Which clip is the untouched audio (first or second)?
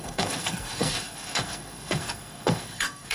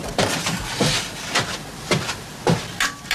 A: second